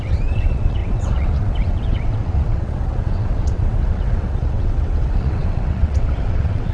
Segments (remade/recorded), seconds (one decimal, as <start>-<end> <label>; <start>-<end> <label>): 0.0-6.7 remade